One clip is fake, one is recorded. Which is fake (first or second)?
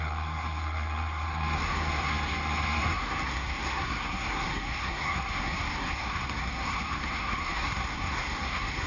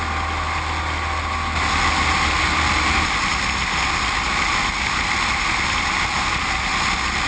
first